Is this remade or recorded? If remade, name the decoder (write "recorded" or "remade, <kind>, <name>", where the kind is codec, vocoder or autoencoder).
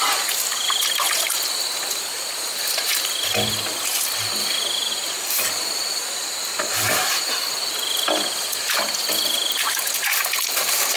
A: recorded